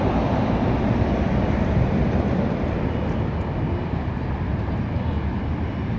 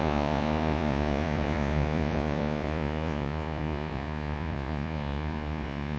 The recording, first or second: first